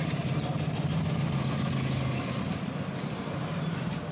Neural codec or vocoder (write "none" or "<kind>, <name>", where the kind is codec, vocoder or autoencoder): none